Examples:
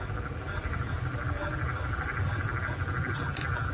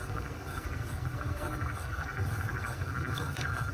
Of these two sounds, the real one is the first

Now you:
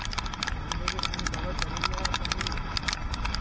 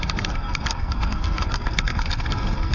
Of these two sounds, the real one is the first